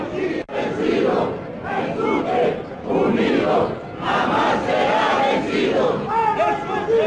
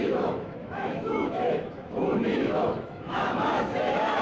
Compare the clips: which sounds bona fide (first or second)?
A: first